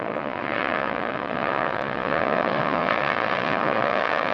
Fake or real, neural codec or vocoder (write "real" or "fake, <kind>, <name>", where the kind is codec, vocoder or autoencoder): fake, vocoder, Vocos